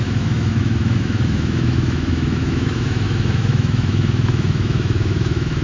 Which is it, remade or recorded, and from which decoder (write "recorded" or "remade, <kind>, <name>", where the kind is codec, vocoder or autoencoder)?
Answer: remade, autoencoder, DAC-VAE